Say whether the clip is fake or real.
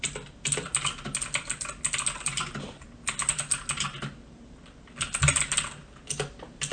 real